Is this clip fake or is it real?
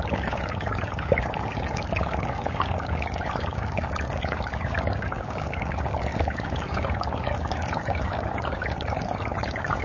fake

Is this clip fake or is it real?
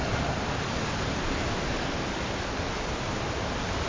real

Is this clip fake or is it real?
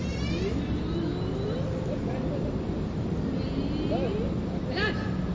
real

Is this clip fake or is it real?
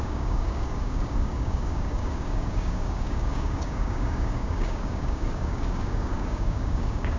fake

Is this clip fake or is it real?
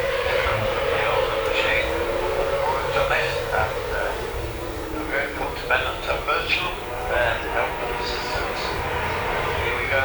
fake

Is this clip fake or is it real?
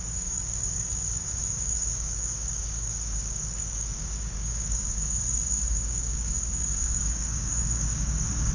fake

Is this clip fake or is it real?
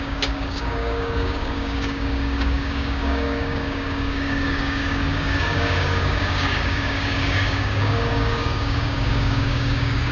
fake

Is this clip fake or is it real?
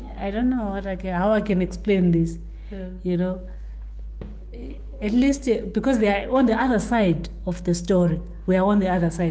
fake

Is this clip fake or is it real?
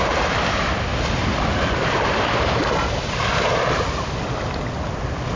real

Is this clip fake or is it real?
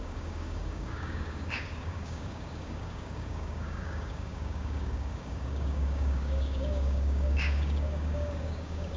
fake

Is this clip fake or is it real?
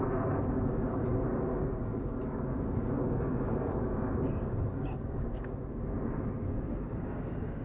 fake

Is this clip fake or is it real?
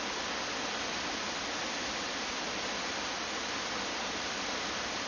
real